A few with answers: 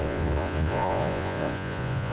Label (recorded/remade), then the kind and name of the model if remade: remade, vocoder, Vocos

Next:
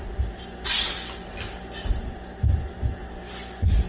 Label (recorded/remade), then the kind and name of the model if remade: recorded